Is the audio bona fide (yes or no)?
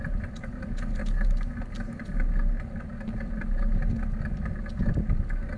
yes